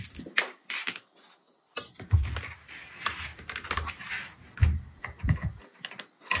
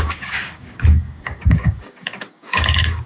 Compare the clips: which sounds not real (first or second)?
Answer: second